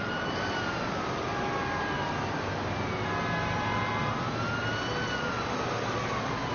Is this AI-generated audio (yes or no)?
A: no